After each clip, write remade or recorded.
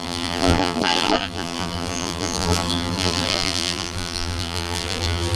remade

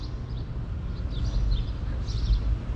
recorded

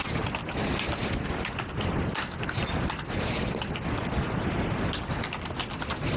recorded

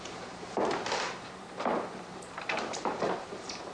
remade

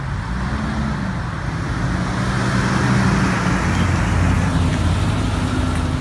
recorded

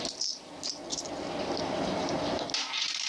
recorded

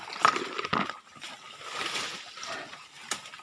remade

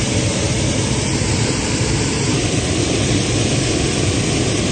remade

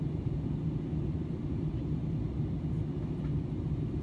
recorded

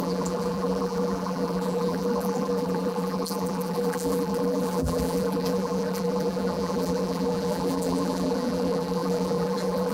remade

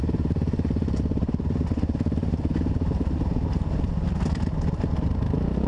recorded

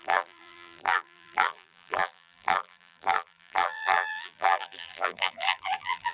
remade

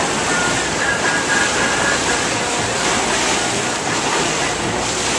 remade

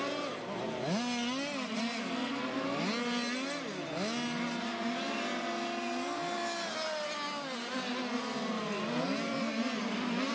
recorded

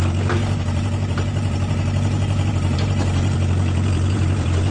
remade